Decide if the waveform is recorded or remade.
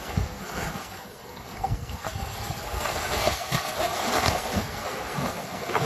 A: remade